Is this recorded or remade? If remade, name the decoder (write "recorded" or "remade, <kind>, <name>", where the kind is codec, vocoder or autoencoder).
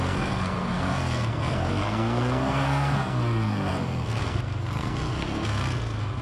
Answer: remade, codec, SNAC